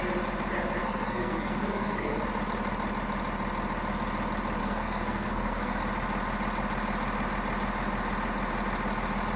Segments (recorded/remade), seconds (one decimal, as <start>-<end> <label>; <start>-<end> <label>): 0.0-0.8 recorded; 0.8-2.2 remade; 2.2-4.6 recorded; 4.6-5.8 remade; 5.8-9.4 recorded